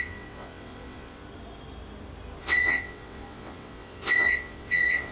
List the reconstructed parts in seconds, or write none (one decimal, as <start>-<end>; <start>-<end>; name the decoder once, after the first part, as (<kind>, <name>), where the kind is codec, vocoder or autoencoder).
0.0-1.2 (vocoder, WaveNeXt); 2.4-5.1